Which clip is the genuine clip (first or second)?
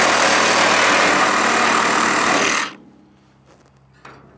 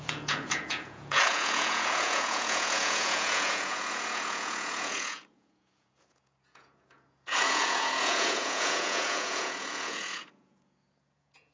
first